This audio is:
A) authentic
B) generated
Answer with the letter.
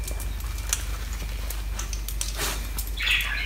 A